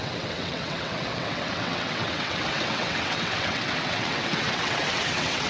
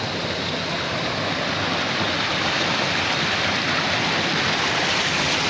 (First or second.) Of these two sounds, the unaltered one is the second